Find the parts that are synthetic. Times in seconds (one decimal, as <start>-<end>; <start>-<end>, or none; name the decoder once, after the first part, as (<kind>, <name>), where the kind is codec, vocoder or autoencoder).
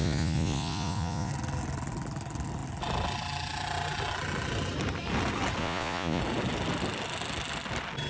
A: 0.0-1.3 (vocoder, Vocos); 5.6-6.2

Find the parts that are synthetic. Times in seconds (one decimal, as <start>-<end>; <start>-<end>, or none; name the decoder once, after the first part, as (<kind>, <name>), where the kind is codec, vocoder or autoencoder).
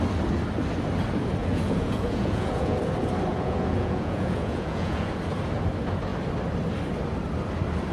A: 1.4-2.8 (vocoder, Vocos); 3.3-5.2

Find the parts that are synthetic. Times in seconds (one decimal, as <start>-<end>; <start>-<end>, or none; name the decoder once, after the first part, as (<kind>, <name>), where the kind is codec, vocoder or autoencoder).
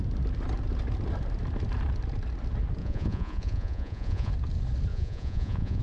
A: 2.8-4.3 (vocoder, Vocos); 4.9-5.8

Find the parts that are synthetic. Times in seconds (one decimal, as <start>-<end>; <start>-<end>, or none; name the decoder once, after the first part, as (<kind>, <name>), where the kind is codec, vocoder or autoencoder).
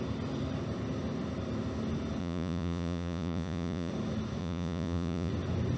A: 2.2-3.9 (vocoder, Vocos); 4.4-5.3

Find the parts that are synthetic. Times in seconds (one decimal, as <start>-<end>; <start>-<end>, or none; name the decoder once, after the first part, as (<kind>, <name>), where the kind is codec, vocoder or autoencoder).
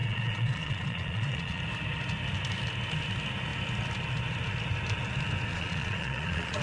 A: 0.0-1.6 (vocoder, Vocos); 5.5-6.6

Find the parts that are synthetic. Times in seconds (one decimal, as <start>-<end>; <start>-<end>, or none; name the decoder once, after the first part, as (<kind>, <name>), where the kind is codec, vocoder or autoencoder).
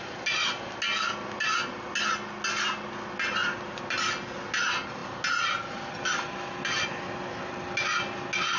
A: none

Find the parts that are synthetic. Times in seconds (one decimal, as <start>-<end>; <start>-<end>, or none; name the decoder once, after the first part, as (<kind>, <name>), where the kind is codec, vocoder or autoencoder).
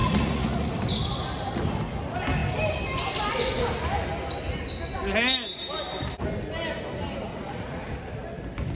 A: 0.0-0.7 (vocoder, Vocos); 7.3-7.8